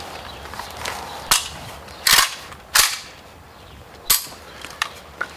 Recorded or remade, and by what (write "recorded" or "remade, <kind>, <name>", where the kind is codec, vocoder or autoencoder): recorded